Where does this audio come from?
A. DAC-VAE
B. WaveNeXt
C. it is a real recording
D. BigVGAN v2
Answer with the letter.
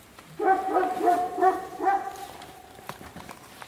D